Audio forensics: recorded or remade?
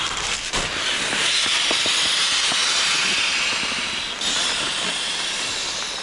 recorded